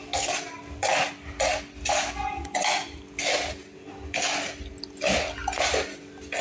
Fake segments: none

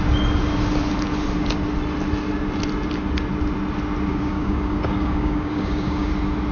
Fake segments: 4.1-6.1 (codec, DAC)